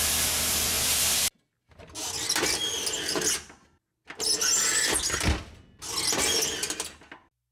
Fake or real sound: real